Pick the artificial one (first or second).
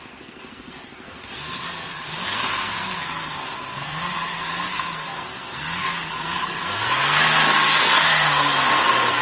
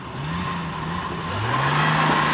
first